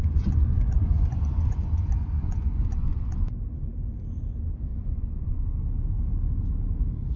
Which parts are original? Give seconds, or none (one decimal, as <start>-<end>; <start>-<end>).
3.3-4.7; 5.5-7.2